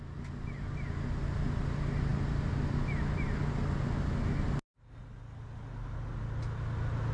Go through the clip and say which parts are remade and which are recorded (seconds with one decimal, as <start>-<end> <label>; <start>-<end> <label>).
0.0-7.1 recorded